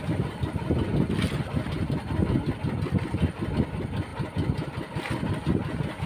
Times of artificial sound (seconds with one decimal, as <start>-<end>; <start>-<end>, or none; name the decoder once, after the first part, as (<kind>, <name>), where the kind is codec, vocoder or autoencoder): none